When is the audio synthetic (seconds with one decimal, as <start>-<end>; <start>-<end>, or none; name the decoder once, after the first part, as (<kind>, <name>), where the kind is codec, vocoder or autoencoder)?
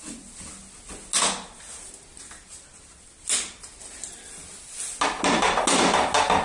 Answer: none